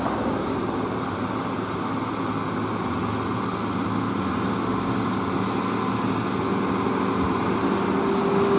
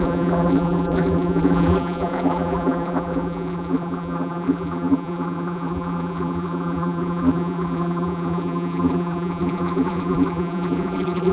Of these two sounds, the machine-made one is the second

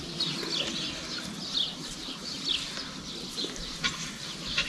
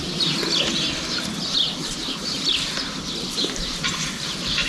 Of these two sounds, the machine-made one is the second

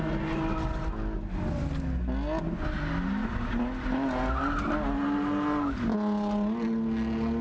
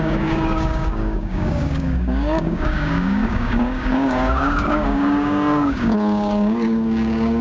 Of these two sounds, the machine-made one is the second